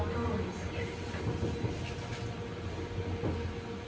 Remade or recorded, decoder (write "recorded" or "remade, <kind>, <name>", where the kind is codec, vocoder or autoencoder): recorded